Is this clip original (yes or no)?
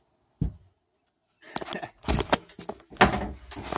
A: yes